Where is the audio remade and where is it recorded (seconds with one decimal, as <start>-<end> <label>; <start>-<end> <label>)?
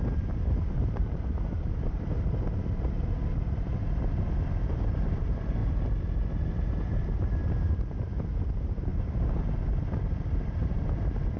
0.0-3.2 remade; 3.2-4.7 recorded; 4.7-5.6 remade; 5.6-6.5 recorded; 6.5-8.9 remade; 8.9-9.5 recorded; 9.5-11.4 remade